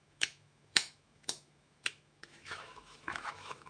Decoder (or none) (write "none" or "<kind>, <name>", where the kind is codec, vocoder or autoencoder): autoencoder, DAC-VAE